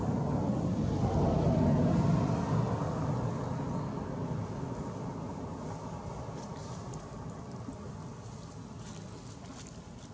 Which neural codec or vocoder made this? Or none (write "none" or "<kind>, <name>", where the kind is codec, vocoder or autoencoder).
none